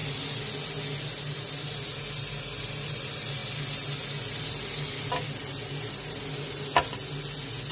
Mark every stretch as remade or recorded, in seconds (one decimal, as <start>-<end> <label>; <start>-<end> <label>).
0.0-7.7 recorded